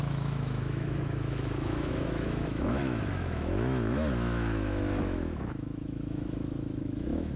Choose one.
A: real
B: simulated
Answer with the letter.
B